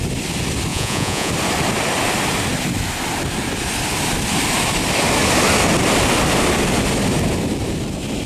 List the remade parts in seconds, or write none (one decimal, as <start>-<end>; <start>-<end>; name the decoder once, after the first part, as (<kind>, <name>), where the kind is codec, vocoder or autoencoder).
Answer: 0.7-1.3 (vocoder, Vocos)